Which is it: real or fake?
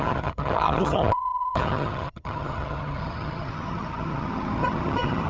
fake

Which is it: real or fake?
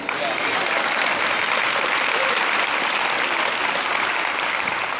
real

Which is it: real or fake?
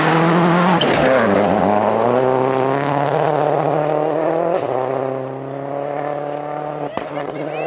real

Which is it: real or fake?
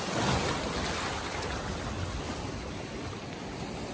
real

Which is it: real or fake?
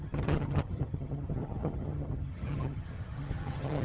fake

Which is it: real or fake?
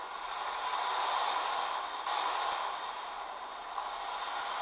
real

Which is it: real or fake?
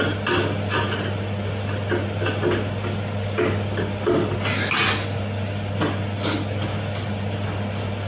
real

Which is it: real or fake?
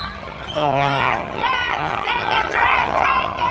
fake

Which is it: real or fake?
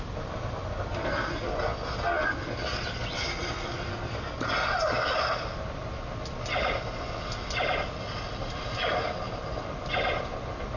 real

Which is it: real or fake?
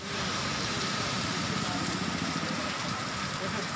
real